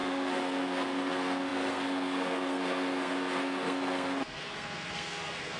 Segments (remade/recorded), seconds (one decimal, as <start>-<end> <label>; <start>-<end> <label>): 0.0-5.6 remade